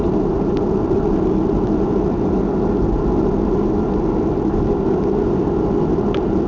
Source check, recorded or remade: recorded